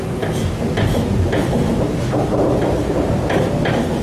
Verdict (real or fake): real